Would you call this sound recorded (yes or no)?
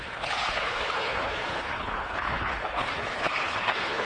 no